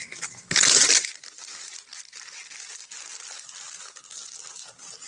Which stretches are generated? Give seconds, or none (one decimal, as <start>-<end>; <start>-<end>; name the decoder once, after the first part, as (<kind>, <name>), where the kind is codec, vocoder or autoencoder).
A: none